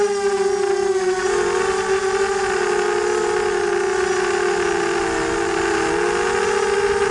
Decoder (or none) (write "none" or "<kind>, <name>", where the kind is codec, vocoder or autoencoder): none